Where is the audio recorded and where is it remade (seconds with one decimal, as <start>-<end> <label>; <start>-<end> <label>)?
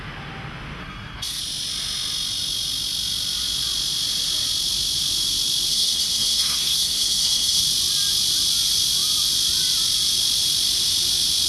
0.0-0.8 recorded; 0.8-1.4 remade; 1.4-5.7 recorded; 5.7-7.6 remade; 7.6-11.5 recorded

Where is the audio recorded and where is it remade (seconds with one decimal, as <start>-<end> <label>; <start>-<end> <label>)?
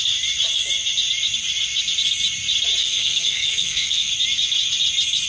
0.0-2.8 recorded; 2.8-4.1 remade; 4.1-5.3 recorded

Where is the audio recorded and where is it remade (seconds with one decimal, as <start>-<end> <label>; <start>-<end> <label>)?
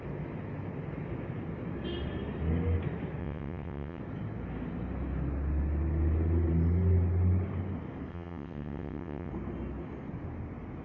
0.0-3.2 recorded; 3.2-4.0 remade; 4.0-8.1 recorded; 8.1-9.3 remade; 9.3-10.8 recorded